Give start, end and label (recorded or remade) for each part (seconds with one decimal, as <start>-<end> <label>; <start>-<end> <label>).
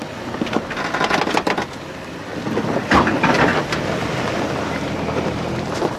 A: 0.0-1.3 recorded; 1.3-6.0 remade